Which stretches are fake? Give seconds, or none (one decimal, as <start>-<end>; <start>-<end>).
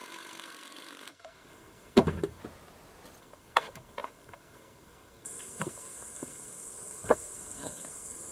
0.0-2.4; 3.2-8.3